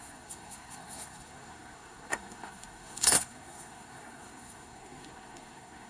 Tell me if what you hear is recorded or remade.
remade